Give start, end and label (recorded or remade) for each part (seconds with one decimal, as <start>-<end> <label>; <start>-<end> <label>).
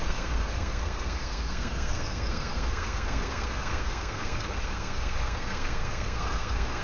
0.0-6.8 remade